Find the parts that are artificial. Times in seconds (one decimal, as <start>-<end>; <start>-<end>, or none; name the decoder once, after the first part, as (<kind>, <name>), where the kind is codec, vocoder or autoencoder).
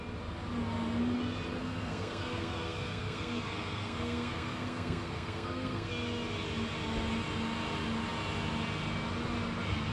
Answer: 1.6-5.9 (codec, SNAC)